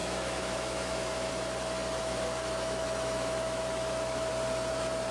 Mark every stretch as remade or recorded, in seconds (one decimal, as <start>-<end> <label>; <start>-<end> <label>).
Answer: 0.0-1.3 remade; 1.3-2.0 recorded; 2.0-4.3 remade; 4.3-5.1 recorded